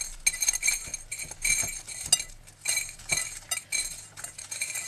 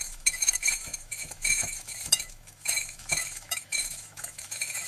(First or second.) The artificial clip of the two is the second